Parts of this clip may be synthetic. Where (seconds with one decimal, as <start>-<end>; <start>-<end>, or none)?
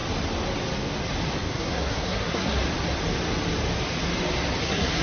1.5-2.6; 4.6-5.0